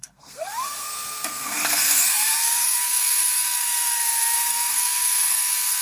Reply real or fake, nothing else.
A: fake